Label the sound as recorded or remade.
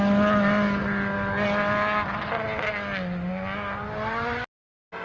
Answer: recorded